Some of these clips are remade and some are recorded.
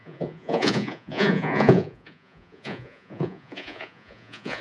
remade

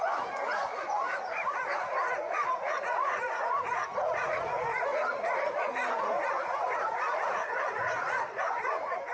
remade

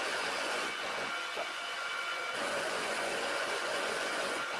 remade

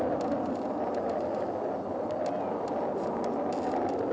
recorded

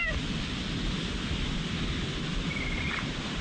recorded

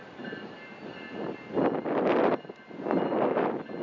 recorded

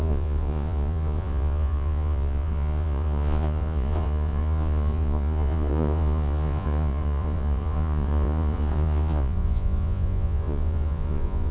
remade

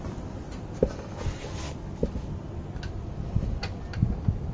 recorded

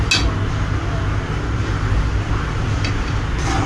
recorded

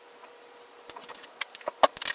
recorded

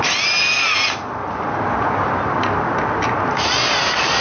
recorded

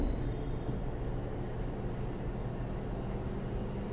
recorded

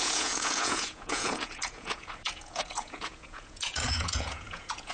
remade